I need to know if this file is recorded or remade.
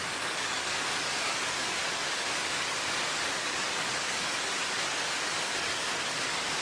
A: remade